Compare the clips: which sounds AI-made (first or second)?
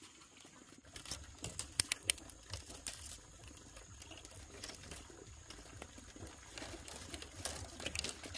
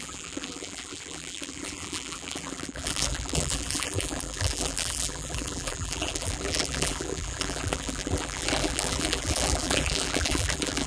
second